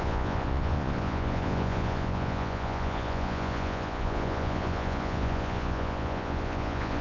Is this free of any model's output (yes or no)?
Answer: no